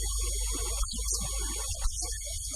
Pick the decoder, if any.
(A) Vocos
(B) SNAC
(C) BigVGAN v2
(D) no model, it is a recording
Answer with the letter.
D